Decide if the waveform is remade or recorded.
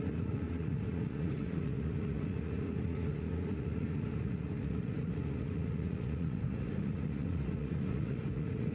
remade